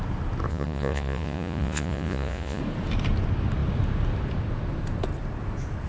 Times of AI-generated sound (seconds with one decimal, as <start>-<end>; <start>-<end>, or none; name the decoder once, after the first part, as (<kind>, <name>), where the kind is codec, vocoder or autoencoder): 0.5-2.6 (vocoder, Vocos)